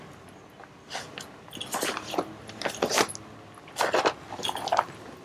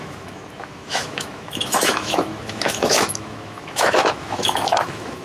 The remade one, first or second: second